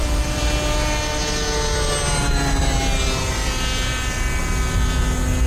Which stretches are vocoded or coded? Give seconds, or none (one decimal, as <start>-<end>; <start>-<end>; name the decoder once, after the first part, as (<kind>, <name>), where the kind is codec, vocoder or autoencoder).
0.0-0.5 (vocoder, BigVGAN v2)